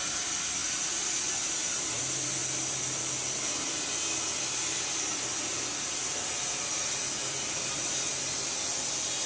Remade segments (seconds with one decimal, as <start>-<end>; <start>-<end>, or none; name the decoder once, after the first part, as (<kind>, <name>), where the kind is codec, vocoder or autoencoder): 0.6-2.0 (vocoder, BigVGAN v2); 2.4-3.0; 5.7-6.7